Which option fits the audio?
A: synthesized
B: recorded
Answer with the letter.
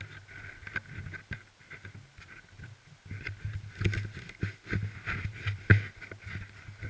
B